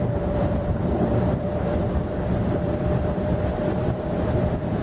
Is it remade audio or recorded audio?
remade